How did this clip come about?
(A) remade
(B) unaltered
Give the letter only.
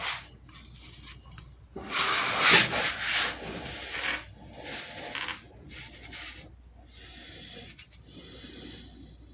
B